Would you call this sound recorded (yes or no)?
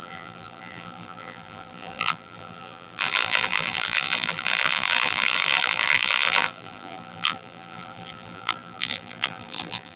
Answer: no